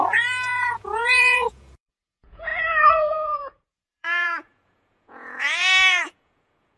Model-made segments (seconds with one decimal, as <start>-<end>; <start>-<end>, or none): 0.0-6.8